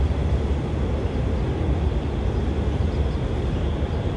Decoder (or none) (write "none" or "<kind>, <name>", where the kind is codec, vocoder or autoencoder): none